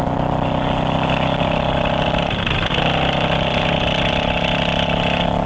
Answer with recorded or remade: recorded